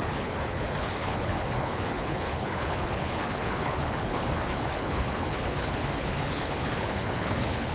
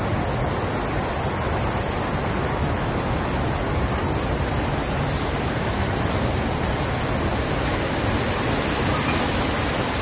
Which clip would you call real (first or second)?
second